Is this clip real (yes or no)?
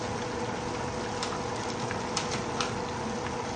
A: yes